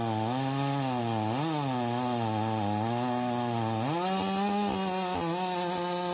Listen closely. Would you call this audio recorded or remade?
recorded